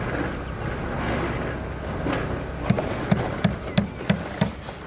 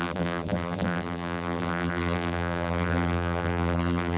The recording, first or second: first